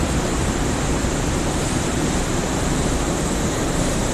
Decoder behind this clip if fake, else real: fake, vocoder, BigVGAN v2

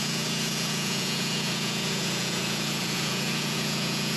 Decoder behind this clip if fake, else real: fake, vocoder, Vocos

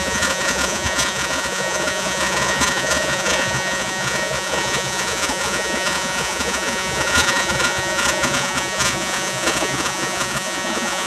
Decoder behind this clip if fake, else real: fake, vocoder, Vocos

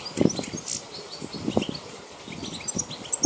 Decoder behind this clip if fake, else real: real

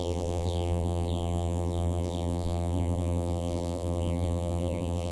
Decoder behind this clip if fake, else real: fake, vocoder, BigVGAN v2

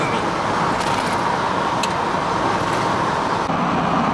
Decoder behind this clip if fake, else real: real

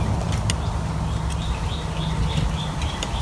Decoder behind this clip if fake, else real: real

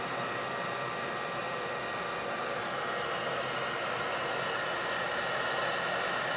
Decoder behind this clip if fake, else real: real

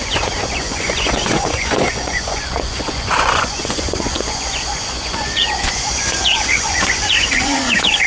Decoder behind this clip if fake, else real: fake, vocoder, Vocos